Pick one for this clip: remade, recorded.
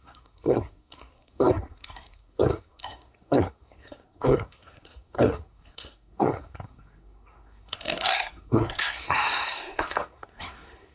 remade